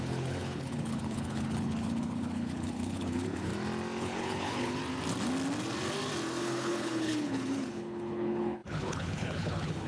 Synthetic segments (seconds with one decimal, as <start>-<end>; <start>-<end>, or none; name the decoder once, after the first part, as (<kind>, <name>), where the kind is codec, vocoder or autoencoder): 0.0-3.5 (codec, HILCodec); 4.0-4.8; 6.4-9.9

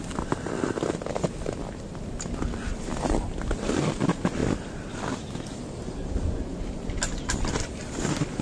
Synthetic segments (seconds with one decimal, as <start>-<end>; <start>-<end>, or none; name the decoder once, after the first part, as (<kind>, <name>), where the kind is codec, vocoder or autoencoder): none